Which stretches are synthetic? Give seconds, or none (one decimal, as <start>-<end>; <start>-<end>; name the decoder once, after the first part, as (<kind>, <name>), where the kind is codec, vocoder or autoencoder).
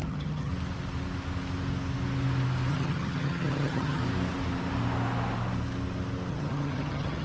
0.0-0.5 (vocoder, HiFi-GAN); 2.7-4.0; 6.3-7.2